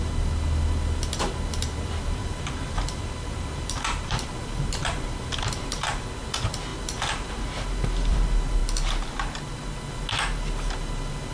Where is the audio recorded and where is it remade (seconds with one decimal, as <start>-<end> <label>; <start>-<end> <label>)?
0.0-2.2 recorded; 2.2-4.3 remade; 4.3-6.7 recorded; 6.7-7.3 remade; 7.3-11.3 recorded